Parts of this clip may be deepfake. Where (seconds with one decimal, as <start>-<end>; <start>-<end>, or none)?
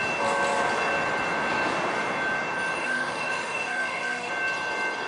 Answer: 2.8-4.3